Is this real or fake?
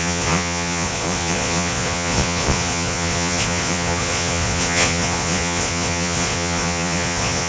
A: fake